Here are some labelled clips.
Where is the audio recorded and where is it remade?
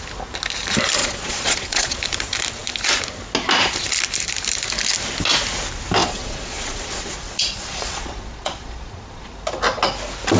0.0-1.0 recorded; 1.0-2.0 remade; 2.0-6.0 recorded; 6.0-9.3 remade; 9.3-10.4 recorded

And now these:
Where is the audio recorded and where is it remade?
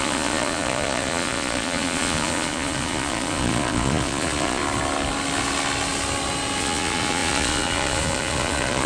0.0-4.6 remade; 4.6-6.6 recorded; 6.6-8.9 remade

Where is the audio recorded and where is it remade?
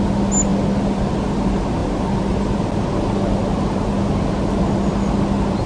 0.0-5.7 recorded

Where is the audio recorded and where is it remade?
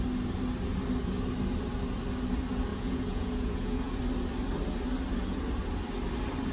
0.0-2.7 recorded; 2.7-4.0 remade; 4.0-6.5 recorded